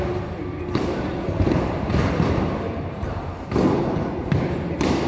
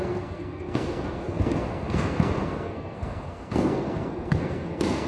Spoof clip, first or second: second